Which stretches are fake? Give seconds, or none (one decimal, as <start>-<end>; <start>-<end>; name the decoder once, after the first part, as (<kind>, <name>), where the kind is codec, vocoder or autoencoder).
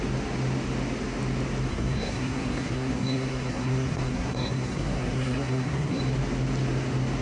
1.7-6.0 (codec, SNAC)